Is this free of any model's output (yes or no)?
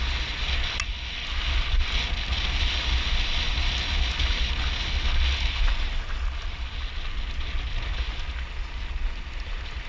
yes